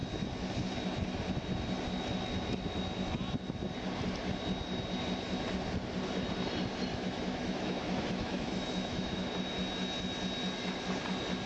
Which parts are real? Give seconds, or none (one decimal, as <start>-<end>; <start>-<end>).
0.0-6.9; 9.3-11.5